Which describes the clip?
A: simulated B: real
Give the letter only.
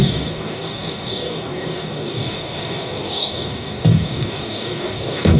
A